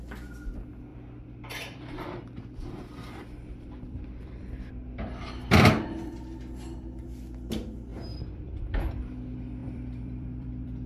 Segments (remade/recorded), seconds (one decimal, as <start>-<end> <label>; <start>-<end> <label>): 0.0-0.9 recorded; 0.9-4.7 remade; 4.7-9.6 recorded; 9.6-10.9 remade

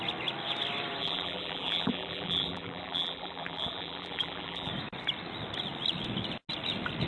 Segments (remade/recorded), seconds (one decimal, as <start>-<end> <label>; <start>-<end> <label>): 0.0-1.0 recorded; 1.0-4.7 remade; 4.7-7.1 recorded